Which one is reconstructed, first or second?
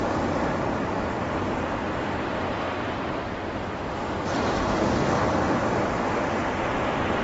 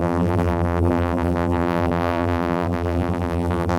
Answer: second